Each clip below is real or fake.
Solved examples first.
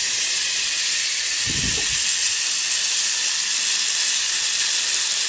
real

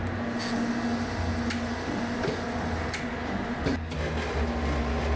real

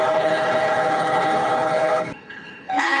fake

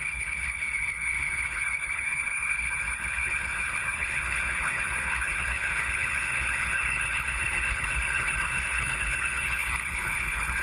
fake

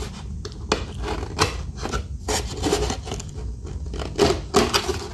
real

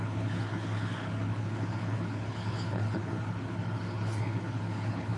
fake